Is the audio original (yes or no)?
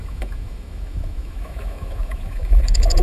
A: no